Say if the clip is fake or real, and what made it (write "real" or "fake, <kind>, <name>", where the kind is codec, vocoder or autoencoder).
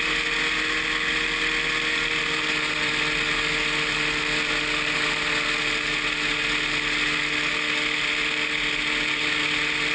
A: real